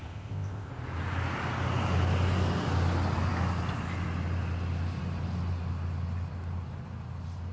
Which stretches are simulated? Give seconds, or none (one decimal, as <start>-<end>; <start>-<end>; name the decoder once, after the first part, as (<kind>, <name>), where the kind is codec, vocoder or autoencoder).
0.0-0.7 (codec, ZipCodec)